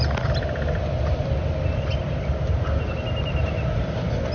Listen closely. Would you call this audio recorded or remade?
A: recorded